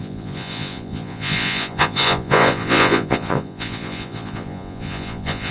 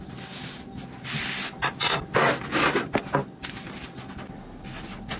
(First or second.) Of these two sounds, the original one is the second